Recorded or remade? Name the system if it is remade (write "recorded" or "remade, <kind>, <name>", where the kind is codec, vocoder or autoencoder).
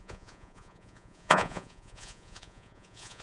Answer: remade, vocoder, Vocos